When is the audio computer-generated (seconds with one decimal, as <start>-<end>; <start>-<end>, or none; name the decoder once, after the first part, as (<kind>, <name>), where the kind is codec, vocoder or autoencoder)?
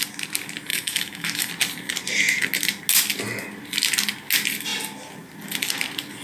0.7-1.5 (autoencoder, DAC-VAE)